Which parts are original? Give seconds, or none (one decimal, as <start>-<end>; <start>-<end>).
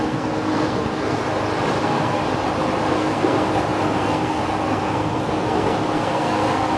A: 1.2-1.8; 2.2-2.9